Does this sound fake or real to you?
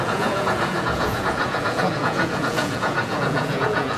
fake